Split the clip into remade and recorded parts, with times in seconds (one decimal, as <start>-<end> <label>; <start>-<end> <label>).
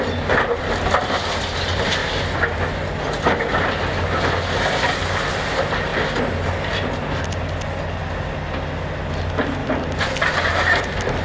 0.0-2.0 recorded; 2.0-2.7 remade; 2.7-9.6 recorded; 9.6-10.3 remade; 10.3-11.2 recorded